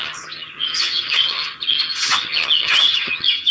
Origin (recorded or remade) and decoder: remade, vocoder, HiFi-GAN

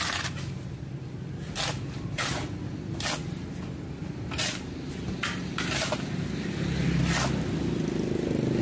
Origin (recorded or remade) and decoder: recorded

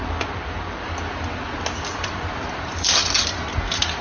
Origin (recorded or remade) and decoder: recorded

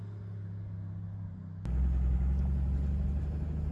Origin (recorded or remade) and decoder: recorded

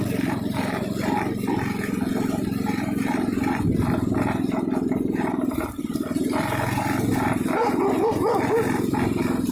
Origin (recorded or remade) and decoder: recorded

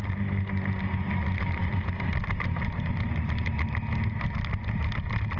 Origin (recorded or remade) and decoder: recorded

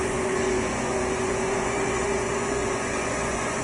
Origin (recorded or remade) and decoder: remade, vocoder, Vocos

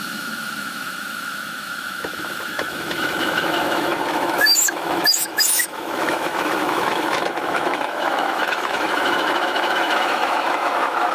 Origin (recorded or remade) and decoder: remade, autoencoder, DAC-VAE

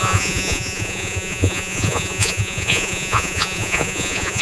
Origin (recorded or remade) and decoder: remade, vocoder, Vocos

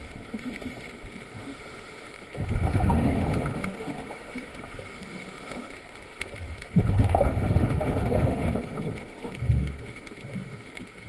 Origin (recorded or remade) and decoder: remade, autoencoder, DAC-VAE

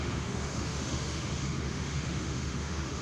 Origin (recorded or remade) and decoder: remade, autoencoder, DAC-VAE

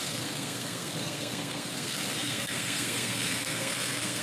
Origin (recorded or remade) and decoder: remade, codec, SNAC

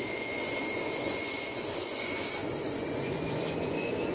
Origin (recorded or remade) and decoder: remade, vocoder, Vocos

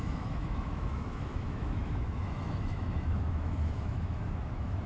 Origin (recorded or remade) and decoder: remade, autoencoder, DAC-VAE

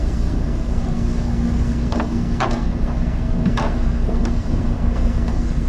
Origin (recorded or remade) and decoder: remade, codec, SNAC